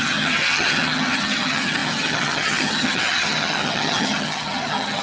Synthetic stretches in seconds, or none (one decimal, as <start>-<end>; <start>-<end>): 0.0-5.0